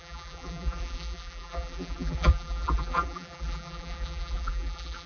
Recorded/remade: remade